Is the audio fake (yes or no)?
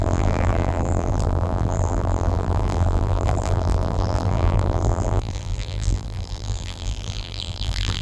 yes